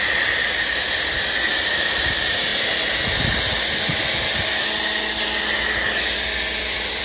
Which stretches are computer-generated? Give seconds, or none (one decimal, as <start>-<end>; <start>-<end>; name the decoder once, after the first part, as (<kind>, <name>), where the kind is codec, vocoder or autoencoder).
0.0-2.5 (vocoder, BigVGAN v2); 6.6-7.0